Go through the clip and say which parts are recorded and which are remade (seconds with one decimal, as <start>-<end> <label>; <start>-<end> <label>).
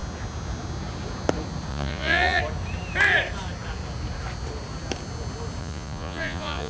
0.0-1.7 recorded; 1.7-2.4 remade; 2.4-5.6 recorded; 5.6-6.7 remade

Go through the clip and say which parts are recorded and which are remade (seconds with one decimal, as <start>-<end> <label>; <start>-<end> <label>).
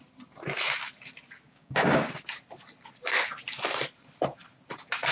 0.0-1.5 recorded; 1.5-2.2 remade; 2.2-5.1 recorded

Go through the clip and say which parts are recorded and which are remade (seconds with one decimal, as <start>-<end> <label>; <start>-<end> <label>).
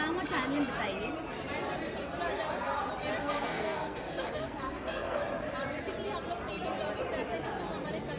0.0-3.2 recorded; 3.2-5.2 remade; 5.2-8.2 recorded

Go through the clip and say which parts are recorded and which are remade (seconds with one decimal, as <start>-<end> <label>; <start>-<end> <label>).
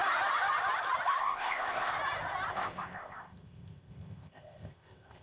0.0-1.2 recorded; 1.2-1.9 remade; 1.9-2.5 recorded; 2.5-5.2 remade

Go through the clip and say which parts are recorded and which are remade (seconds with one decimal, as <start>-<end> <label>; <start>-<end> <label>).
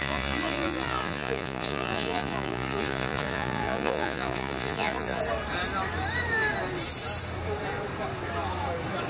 0.0-5.2 remade; 5.2-9.1 recorded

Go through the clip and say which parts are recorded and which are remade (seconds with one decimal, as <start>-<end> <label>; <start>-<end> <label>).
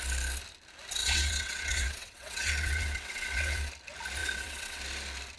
0.0-1.0 recorded; 1.0-3.7 remade; 3.7-4.2 recorded; 4.2-4.8 remade; 4.8-5.4 recorded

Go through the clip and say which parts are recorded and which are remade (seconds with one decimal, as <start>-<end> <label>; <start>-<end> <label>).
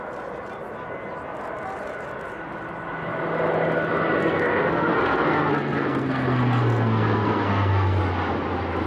0.0-4.2 recorded; 4.2-8.0 remade; 8.0-8.9 recorded